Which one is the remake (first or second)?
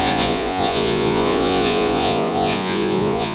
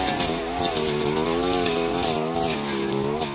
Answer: first